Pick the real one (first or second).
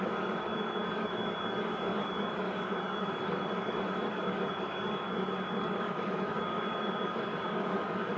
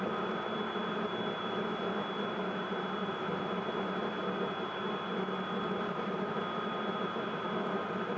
second